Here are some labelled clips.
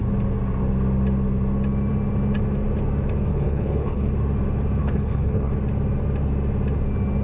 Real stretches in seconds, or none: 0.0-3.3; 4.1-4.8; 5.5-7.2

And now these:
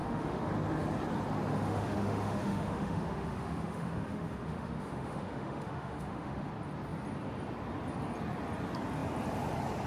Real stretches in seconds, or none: 0.5-1.5; 6.5-9.9

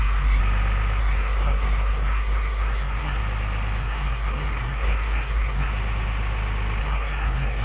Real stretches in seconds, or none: 0.4-1.0; 3.2-3.8; 5.7-6.8

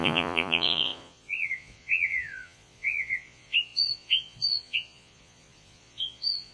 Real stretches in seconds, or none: none

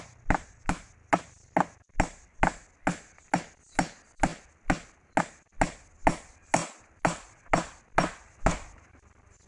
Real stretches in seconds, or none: 0.0-9.5